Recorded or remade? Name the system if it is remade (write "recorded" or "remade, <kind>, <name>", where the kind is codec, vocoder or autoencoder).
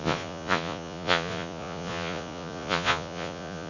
remade, vocoder, Vocos